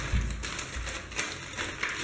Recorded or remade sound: recorded